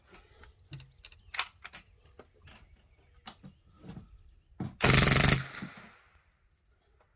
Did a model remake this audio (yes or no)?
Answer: no